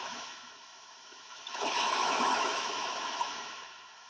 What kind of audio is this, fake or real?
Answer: fake